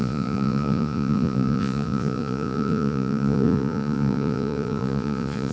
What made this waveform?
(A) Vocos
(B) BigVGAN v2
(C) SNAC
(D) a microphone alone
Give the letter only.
A